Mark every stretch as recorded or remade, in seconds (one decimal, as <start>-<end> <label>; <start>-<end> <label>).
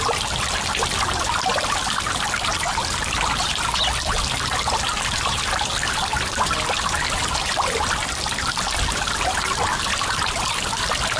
0.0-11.2 recorded